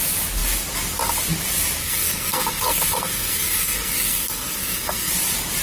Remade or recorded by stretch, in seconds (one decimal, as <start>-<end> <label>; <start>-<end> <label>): 0.0-1.8 recorded; 1.8-5.1 remade; 5.1-5.6 recorded